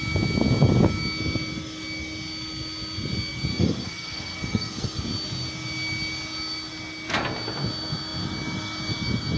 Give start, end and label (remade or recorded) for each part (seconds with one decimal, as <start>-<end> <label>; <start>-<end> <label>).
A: 0.0-3.5 recorded; 3.5-5.0 remade; 5.0-9.4 recorded